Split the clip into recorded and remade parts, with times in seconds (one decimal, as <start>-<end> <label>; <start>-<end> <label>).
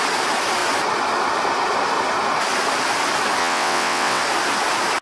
0.0-3.4 recorded; 3.4-4.2 remade; 4.2-5.0 recorded